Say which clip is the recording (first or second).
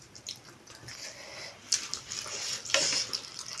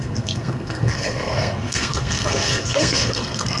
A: first